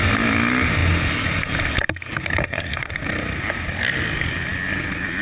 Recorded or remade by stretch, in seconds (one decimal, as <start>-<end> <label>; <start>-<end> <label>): 0.0-2.4 recorded; 2.4-2.9 remade; 2.9-5.2 recorded